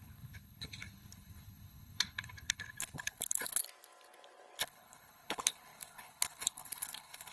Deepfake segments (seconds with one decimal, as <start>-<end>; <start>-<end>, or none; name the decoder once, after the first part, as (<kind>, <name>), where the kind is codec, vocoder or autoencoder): 0.0-3.6 (codec, HILCodec); 4.6-7.3